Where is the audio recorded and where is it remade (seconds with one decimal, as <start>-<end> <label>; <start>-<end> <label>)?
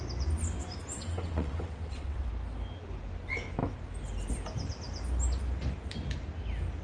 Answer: 0.0-0.9 recorded; 0.9-2.3 remade; 2.3-6.8 recorded